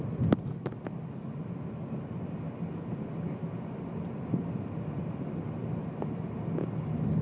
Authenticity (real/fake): real